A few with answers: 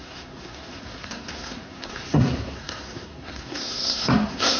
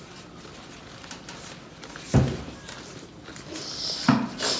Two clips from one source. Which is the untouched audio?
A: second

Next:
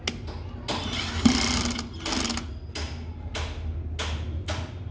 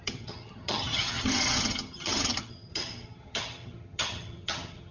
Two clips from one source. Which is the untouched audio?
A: first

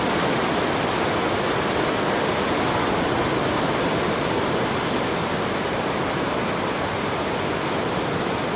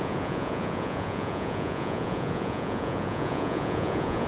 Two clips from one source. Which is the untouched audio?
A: first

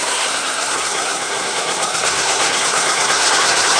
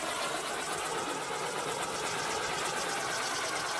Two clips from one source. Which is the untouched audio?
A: second